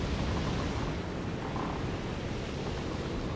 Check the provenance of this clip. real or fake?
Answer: real